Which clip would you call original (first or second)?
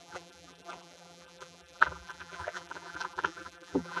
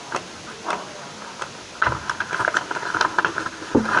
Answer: second